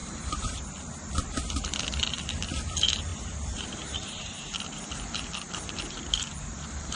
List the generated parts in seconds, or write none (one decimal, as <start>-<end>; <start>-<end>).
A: 0.0-0.6; 3.1-5.8